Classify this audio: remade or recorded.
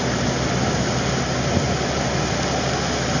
recorded